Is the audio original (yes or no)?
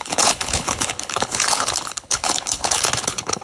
no